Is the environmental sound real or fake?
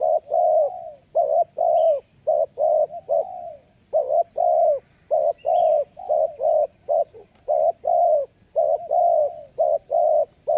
real